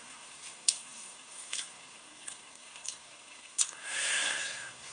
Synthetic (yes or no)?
yes